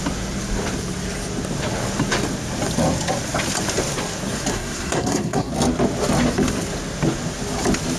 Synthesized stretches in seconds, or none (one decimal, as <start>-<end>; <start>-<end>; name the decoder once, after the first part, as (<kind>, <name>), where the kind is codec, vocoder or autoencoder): 4.5-5.5 (codec, SNAC)